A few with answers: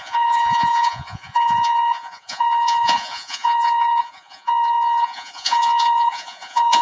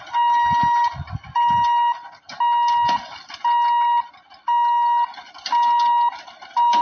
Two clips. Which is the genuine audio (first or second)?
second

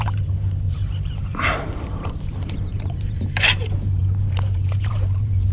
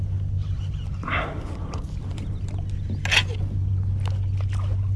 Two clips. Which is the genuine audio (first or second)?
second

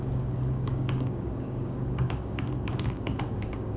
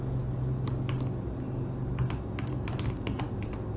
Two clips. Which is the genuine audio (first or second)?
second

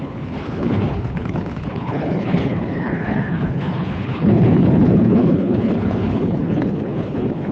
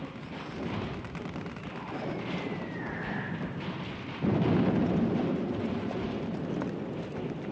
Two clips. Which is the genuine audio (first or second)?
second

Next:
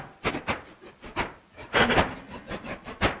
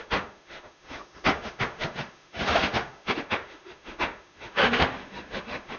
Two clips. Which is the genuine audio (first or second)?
first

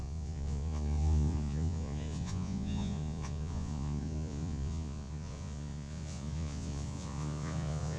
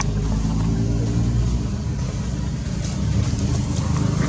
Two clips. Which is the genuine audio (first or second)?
second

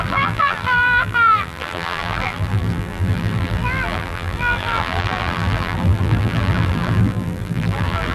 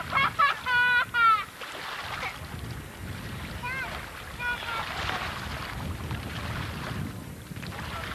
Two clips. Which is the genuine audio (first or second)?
second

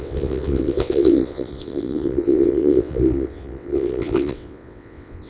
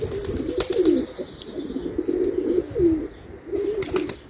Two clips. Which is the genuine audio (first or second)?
second